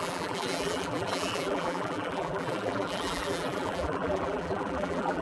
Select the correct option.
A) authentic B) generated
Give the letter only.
B